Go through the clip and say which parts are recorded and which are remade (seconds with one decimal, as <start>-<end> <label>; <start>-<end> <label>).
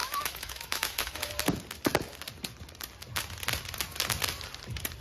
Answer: 0.0-1.3 remade; 1.3-5.0 recorded